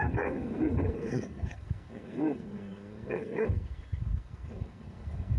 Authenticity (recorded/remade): remade